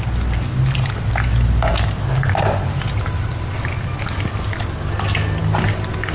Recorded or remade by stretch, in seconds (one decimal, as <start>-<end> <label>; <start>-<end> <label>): 0.0-6.1 recorded